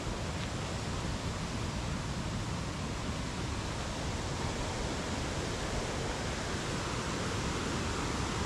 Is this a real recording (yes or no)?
yes